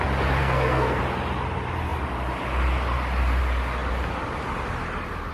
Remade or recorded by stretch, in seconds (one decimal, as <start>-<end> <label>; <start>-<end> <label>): 0.0-0.4 recorded; 0.4-1.0 remade; 1.0-5.3 recorded

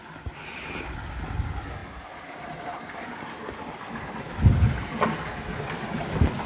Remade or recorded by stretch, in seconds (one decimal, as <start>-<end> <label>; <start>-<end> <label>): 0.0-6.5 recorded

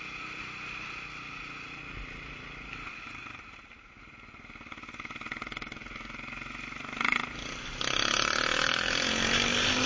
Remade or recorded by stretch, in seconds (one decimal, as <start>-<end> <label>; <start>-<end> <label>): 0.0-2.9 recorded; 2.9-4.4 remade; 4.4-9.9 recorded